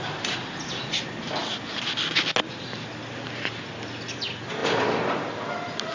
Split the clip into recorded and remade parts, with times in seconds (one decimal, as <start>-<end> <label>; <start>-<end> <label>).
0.0-5.9 recorded